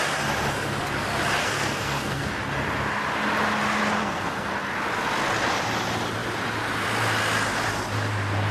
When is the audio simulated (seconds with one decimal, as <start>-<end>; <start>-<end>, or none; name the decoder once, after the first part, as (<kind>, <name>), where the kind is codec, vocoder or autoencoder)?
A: 1.4-2.3 (codec, SNAC); 4.0-4.5